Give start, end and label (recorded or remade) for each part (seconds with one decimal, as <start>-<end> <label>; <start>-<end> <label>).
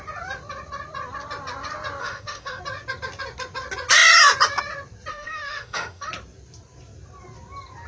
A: 0.0-2.0 recorded; 2.0-2.6 remade; 2.6-5.1 recorded; 5.1-6.1 remade; 6.1-7.9 recorded